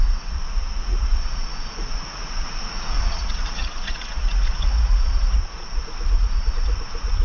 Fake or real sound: fake